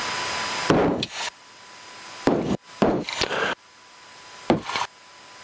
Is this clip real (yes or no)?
yes